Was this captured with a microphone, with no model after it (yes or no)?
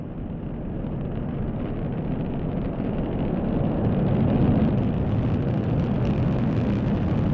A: yes